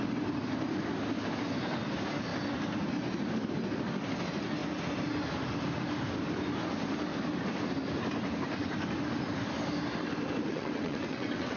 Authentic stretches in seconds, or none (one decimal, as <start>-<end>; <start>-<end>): 0.0-10.5